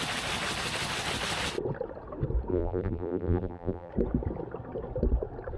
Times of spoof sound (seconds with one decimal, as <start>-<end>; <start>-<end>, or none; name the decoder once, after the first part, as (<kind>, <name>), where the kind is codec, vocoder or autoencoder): 2.5-3.9 (vocoder, BigVGAN v2)